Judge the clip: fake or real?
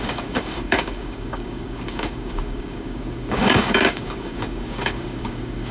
fake